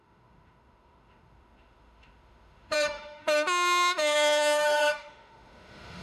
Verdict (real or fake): fake